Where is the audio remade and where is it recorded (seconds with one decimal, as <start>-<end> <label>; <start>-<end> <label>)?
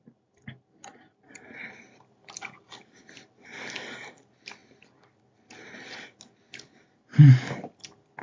0.0-8.2 recorded